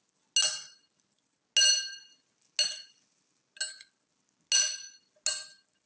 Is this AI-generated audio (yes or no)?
no